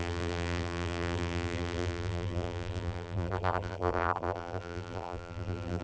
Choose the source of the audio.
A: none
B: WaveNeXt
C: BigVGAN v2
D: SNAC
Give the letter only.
C